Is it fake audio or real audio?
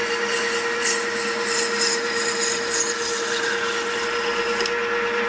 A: real